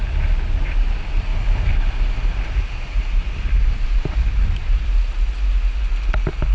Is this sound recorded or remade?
recorded